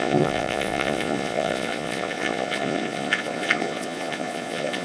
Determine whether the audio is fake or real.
fake